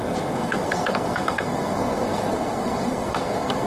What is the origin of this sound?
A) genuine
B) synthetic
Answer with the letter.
B